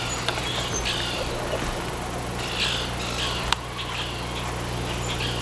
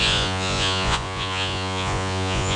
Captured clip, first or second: first